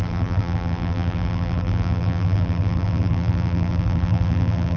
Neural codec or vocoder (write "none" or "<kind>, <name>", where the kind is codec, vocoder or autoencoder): vocoder, BigVGAN v2